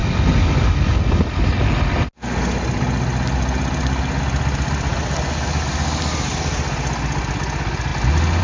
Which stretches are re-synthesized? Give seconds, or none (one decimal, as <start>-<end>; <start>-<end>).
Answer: none